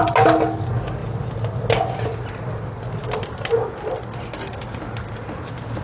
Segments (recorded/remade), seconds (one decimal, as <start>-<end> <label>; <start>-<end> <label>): 0.0-5.8 recorded

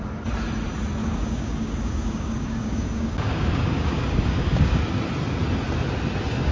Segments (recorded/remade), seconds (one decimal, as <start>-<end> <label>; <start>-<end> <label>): 0.0-1.0 recorded; 1.0-4.8 remade; 4.8-6.5 recorded